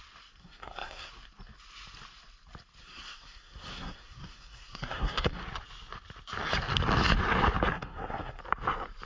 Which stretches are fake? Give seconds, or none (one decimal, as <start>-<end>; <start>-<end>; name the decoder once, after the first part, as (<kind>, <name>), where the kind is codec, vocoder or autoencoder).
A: 0.4-1.1 (codec, SNAC); 2.8-5.4; 7.7-8.4

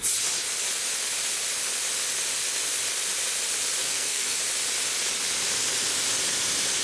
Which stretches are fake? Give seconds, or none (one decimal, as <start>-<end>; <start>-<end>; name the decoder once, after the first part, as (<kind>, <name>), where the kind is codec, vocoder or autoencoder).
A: 3.8-4.4 (codec, SNAC)

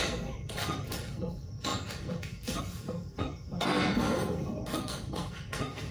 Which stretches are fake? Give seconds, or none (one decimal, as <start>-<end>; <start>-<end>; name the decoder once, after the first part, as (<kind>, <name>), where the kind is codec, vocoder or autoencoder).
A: 0.0-5.9 (codec, SNAC)

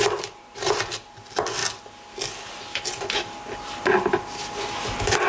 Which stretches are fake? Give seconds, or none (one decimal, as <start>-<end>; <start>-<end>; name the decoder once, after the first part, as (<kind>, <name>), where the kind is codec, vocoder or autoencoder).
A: none

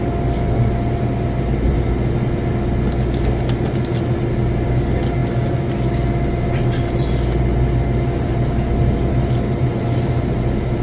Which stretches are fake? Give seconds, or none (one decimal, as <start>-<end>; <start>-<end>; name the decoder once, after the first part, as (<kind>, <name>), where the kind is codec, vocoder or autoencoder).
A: none

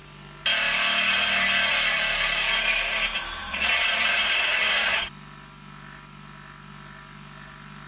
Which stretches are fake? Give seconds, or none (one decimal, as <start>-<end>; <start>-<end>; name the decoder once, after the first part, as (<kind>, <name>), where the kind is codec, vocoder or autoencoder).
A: 3.5-5.1 (vocoder, Vocos)

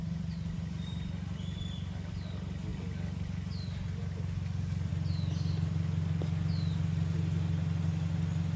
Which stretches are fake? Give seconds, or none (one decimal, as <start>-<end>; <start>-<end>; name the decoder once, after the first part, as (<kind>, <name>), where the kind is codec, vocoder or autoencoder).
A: none

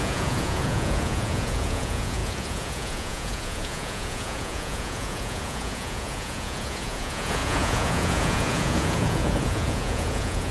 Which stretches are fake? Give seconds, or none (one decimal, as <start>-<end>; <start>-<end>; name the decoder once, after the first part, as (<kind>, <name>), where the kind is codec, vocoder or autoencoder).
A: 0.0-10.5 (vocoder, Vocos)